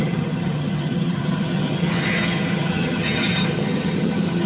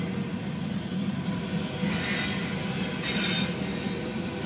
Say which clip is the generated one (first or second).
first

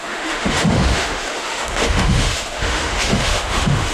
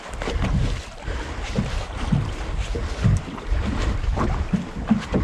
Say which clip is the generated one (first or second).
first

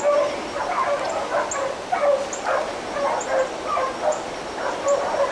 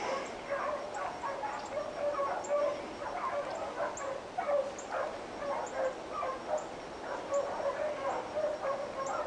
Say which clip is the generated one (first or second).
first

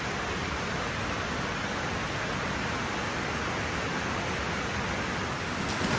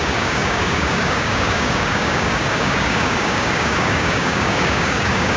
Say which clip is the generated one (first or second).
second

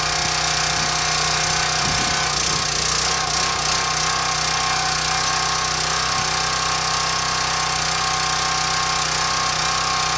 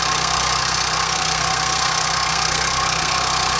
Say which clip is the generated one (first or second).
second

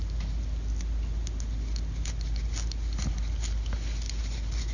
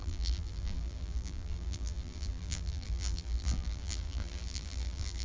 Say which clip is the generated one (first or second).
second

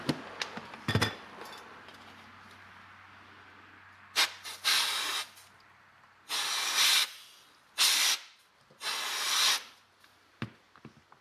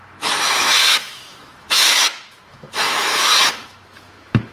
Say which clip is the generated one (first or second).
second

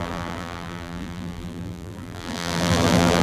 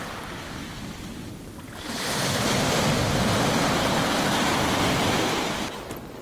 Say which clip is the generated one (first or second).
first